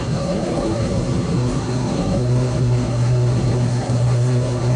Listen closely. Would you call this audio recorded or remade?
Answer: remade